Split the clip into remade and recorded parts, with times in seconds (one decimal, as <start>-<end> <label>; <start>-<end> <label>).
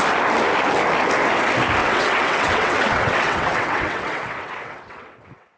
0.0-1.8 recorded; 1.8-5.6 remade